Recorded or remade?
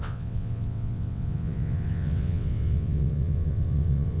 remade